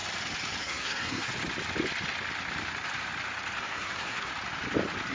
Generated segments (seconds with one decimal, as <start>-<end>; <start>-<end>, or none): 0.6-1.3; 3.6-4.3